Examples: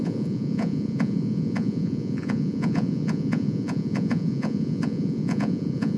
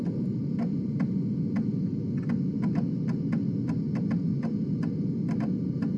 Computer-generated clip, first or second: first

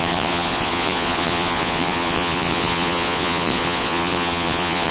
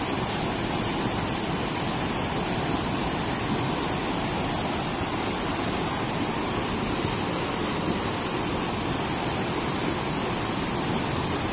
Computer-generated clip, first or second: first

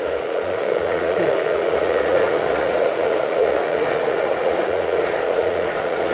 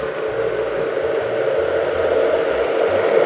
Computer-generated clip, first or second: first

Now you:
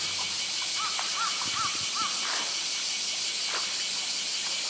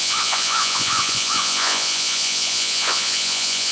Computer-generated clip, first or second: second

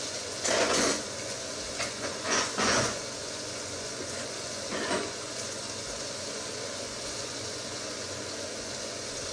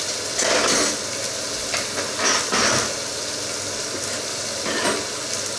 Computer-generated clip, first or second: first